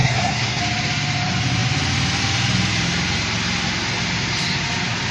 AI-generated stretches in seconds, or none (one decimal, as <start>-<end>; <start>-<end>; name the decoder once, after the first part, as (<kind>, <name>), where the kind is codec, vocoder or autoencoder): 0.0-0.6 (codec, SNAC)